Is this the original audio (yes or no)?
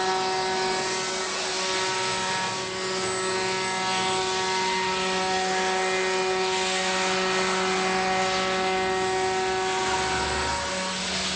yes